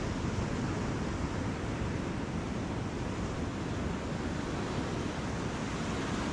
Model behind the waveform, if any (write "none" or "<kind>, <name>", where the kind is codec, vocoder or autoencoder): none